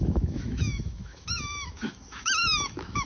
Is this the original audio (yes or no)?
no